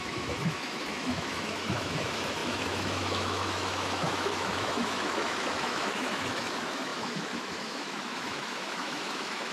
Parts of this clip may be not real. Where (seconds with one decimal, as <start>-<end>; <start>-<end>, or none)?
0.0-9.5